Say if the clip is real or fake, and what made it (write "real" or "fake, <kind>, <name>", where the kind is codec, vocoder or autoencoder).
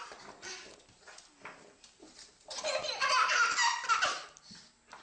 real